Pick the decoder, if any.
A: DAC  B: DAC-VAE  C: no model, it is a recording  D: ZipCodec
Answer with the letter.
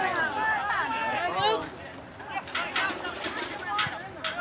C